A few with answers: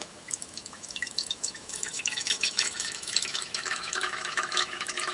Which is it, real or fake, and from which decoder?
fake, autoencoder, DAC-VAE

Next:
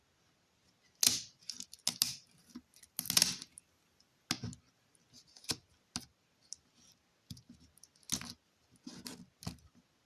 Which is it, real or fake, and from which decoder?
real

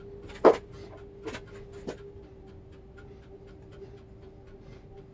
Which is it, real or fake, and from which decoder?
real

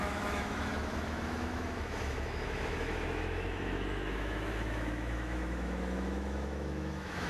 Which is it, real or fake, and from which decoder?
fake, autoencoder, DAC-VAE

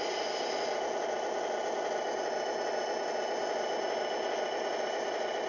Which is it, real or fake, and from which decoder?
real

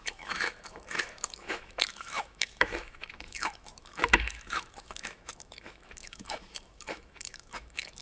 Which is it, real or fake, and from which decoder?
fake, autoencoder, DAC-VAE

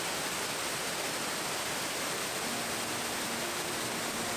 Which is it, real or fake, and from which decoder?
real